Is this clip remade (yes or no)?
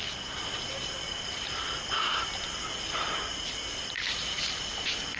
no